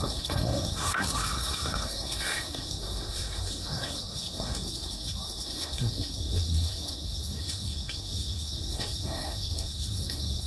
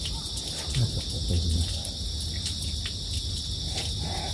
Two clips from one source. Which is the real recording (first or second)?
second